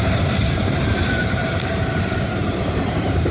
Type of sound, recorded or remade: remade